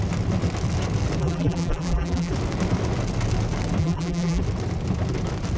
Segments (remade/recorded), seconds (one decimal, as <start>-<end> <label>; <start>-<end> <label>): 0.0-1.2 recorded; 1.2-2.3 remade; 2.3-3.8 recorded; 3.8-4.4 remade; 4.4-5.6 recorded